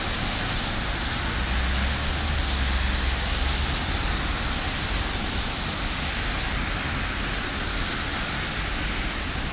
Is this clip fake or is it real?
real